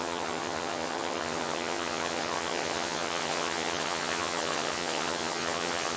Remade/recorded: remade